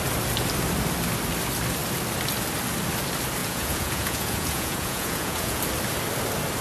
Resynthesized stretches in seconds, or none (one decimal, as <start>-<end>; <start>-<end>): 3.4-5.6